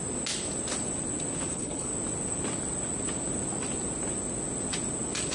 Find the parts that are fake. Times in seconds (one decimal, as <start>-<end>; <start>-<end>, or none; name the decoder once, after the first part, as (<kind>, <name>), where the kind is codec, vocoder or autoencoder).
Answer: 1.5-1.9 (codec, HILCodec)

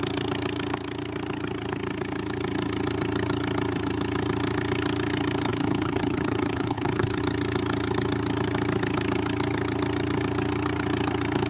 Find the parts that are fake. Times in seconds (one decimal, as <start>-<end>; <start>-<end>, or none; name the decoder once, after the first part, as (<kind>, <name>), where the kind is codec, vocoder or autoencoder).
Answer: 5.5-7.2 (codec, HILCodec)

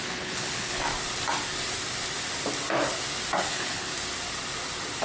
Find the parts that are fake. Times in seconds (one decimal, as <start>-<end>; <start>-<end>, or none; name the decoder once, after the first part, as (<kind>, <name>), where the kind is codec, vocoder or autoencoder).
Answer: 0.0-0.9 (codec, HILCodec); 3.4-3.9